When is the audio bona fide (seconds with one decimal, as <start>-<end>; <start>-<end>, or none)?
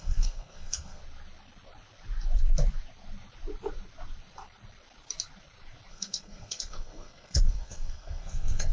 1.0-5.9